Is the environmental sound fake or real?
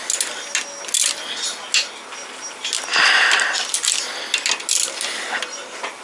real